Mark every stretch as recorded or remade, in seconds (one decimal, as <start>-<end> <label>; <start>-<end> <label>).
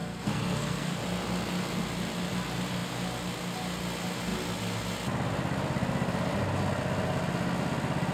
0.0-0.9 remade; 0.9-8.1 recorded